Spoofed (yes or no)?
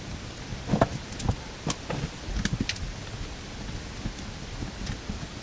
no